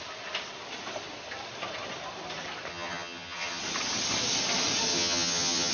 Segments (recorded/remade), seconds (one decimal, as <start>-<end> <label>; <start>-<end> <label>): 0.0-2.7 recorded; 2.7-3.6 remade; 3.6-4.9 recorded; 4.9-5.7 remade